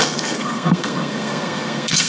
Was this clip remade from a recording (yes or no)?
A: yes